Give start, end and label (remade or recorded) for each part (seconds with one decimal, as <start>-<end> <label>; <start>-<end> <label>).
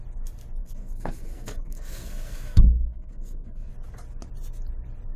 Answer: 0.0-0.6 recorded; 0.6-3.7 remade; 3.7-5.2 recorded